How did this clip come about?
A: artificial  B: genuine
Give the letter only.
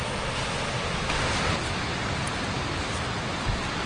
B